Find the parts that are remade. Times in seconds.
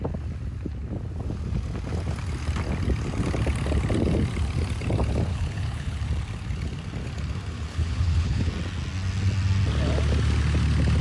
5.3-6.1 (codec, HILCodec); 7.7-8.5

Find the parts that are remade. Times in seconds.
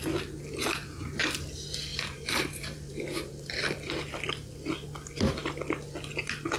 1.9-3.5 (vocoder, BigVGAN v2)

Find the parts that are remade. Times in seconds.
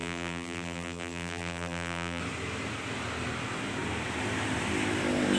0.0-2.2 (vocoder, BigVGAN v2)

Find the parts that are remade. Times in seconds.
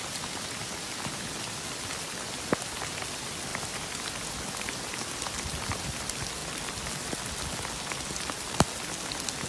3.5-4.3 (vocoder, BigVGAN v2); 6.4-7.3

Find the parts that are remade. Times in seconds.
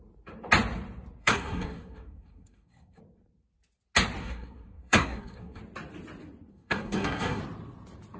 1.2-3.0 (codec, SNAC); 4.2-5.6; 6.5-7.4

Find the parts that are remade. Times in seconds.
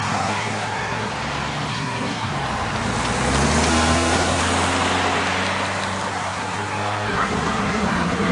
0.0-1.1 (codec, SNAC); 1.7-2.3; 3.7-4.4; 6.1-8.3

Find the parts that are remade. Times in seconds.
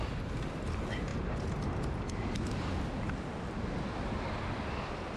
none